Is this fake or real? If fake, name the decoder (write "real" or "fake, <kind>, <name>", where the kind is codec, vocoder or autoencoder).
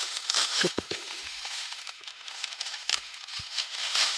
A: fake, autoencoder, DAC-VAE